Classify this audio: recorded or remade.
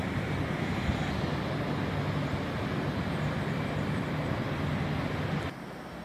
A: recorded